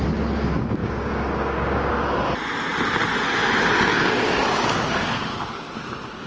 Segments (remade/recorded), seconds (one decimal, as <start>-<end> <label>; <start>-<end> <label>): 0.0-0.8 recorded; 0.8-1.9 remade; 1.9-3.9 recorded; 3.9-5.1 remade; 5.1-6.3 recorded